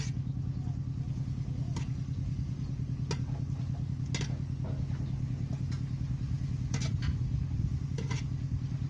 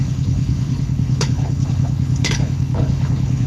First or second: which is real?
first